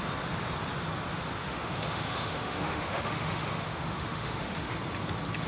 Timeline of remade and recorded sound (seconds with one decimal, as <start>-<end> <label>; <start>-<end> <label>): 0.0-1.4 recorded; 1.4-4.7 remade; 4.7-5.5 recorded